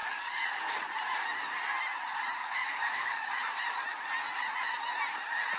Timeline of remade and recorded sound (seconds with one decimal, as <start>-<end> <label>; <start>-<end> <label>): 0.0-0.9 remade; 0.9-2.4 recorded; 2.4-3.3 remade; 3.3-5.6 recorded